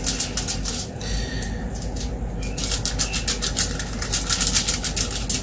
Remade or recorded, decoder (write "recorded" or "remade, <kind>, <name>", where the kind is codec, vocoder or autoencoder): recorded